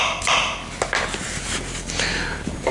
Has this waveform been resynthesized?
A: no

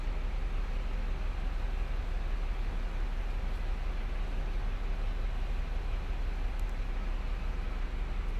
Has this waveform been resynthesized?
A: no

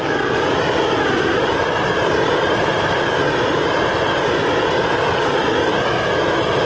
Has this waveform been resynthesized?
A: no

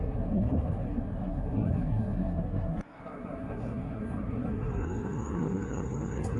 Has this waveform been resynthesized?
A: yes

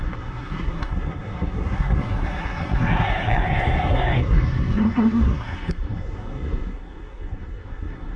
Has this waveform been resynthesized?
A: yes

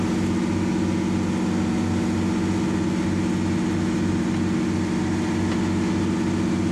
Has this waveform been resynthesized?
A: no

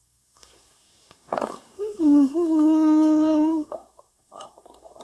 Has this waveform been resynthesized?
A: yes